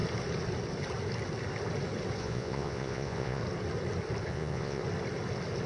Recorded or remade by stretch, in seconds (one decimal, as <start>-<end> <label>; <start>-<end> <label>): 0.0-2.2 recorded; 2.2-3.4 remade; 3.4-4.3 recorded; 4.3-4.8 remade; 4.8-5.7 recorded